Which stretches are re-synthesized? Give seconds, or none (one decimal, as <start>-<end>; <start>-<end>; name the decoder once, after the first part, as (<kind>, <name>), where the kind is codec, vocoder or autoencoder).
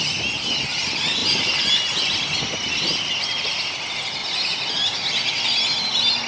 none